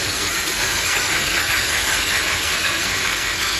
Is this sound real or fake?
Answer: fake